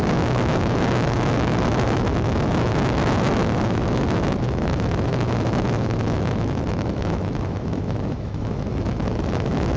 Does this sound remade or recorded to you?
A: remade